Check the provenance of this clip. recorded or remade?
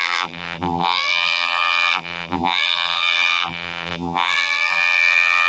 remade